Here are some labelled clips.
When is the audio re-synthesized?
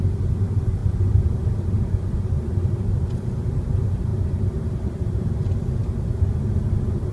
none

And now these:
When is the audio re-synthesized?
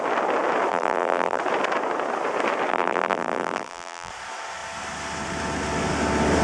0.7-1.4 (vocoder, BigVGAN v2); 2.7-4.1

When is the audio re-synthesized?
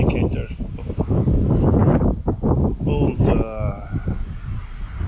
none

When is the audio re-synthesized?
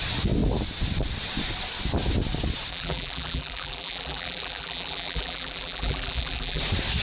2.7-6.6 (vocoder, BigVGAN v2)